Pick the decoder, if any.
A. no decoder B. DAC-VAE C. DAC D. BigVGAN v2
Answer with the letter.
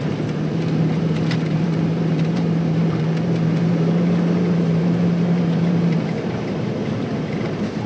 D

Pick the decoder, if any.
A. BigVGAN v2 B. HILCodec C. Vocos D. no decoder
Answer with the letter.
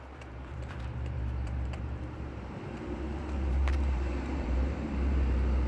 A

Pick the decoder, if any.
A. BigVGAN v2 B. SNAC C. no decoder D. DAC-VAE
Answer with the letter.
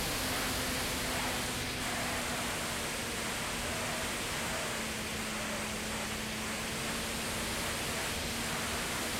C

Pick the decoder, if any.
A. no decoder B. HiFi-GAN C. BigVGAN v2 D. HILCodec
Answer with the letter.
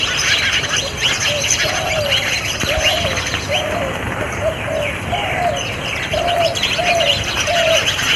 A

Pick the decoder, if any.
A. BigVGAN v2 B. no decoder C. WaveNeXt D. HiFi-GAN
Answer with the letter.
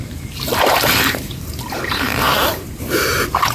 A